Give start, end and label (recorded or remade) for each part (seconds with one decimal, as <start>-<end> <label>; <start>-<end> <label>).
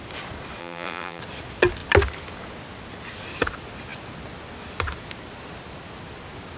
0.0-0.6 recorded; 0.6-1.2 remade; 1.2-6.6 recorded